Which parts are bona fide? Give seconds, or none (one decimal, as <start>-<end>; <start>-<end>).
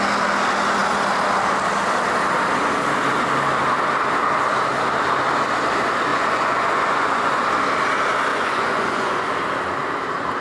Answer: 0.0-6.1; 7.4-8.3; 9.3-10.4